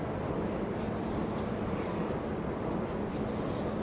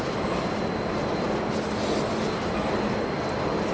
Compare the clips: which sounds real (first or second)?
second